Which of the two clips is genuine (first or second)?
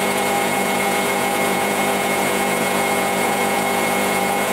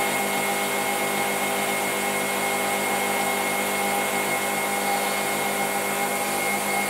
second